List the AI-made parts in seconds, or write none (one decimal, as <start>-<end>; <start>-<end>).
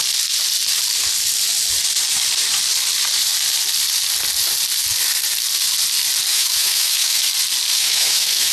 6.3-7.3; 7.7-8.5